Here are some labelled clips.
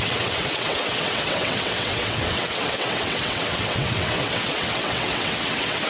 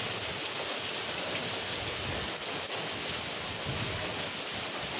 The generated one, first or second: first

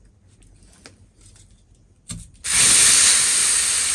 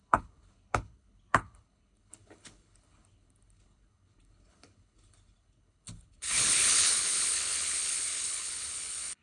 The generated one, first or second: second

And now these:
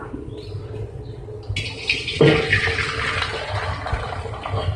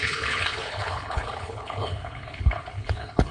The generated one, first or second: second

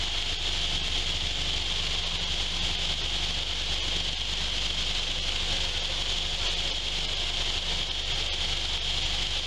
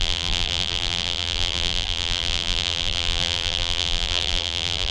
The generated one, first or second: second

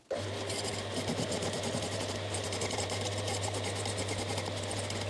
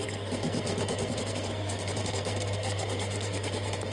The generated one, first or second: second